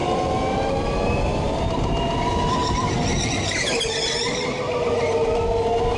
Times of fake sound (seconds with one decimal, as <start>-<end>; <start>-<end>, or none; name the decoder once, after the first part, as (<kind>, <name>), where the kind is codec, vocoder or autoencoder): none